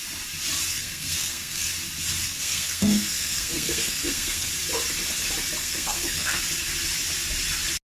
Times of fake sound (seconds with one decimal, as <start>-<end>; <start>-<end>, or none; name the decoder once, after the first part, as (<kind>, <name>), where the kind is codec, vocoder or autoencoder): 0.7-1.7 (codec, SNAC); 2.2-4.5; 5.6-6.4